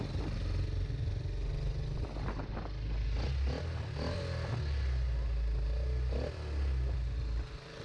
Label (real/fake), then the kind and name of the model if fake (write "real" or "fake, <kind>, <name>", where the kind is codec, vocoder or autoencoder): real